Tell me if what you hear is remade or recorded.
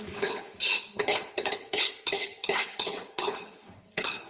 remade